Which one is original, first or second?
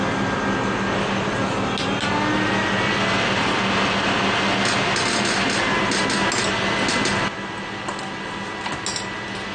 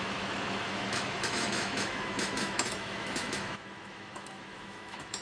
first